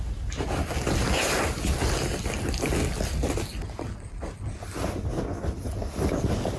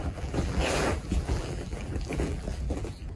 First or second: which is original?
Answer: first